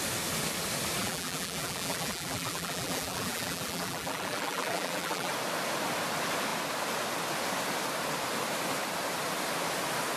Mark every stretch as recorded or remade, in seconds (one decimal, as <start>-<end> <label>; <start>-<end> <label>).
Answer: 0.0-1.0 recorded; 1.0-5.3 remade; 5.3-10.2 recorded